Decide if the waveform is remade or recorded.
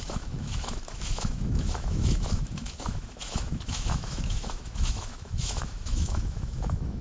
remade